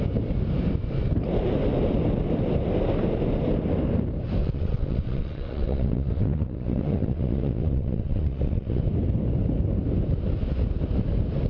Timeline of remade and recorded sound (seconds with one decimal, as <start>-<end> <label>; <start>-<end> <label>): 0.0-4.4 recorded; 4.4-8.8 remade; 8.8-11.5 recorded